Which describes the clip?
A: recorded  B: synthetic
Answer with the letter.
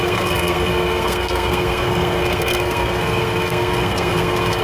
B